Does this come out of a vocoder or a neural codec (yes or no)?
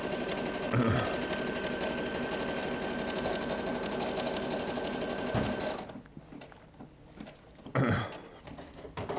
no